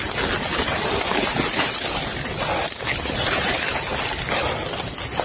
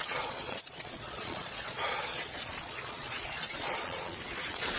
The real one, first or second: first